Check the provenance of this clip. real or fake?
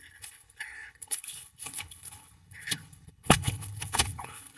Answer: fake